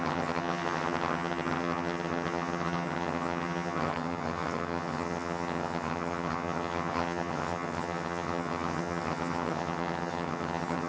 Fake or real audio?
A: fake